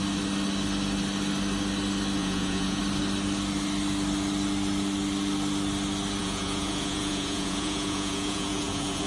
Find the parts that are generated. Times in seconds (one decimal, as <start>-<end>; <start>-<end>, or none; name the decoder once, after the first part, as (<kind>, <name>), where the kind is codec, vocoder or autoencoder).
2.2-2.8 (vocoder, Vocos); 6.2-9.1